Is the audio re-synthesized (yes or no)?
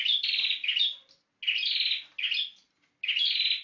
no